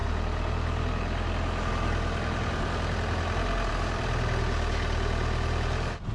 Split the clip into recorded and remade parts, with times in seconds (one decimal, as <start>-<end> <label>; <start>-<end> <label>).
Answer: 0.0-6.1 recorded